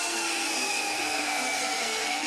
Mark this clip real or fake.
fake